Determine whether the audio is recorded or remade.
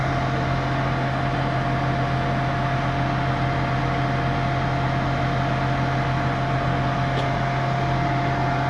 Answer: recorded